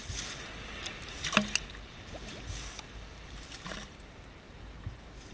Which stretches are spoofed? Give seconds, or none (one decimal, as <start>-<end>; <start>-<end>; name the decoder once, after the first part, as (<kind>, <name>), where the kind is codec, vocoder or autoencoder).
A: none